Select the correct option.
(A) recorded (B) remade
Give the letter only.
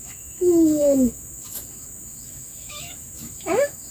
B